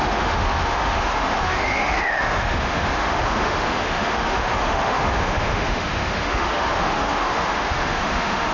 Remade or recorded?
remade